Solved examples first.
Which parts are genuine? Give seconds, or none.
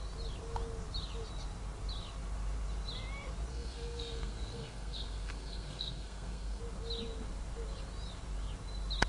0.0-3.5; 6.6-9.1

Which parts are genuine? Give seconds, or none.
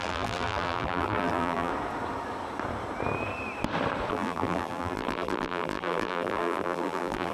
1.7-4.1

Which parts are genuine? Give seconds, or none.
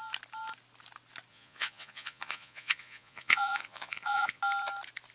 0.0-1.3; 4.4-5.1